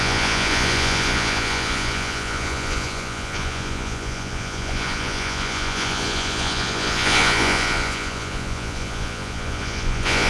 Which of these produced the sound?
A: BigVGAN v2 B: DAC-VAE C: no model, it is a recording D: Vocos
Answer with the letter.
D